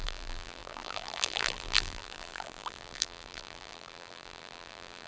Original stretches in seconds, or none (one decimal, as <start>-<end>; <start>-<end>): none